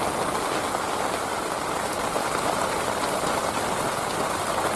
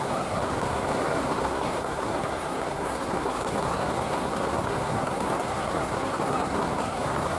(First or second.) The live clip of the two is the first